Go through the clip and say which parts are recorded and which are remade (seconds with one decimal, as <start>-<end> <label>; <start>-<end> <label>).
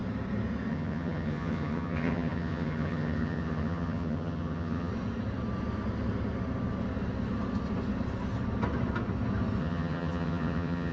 0.0-0.7 recorded; 0.7-4.9 remade; 4.9-9.6 recorded; 9.6-10.9 remade